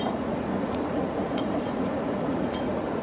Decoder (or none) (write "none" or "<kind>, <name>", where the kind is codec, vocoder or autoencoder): vocoder, Vocos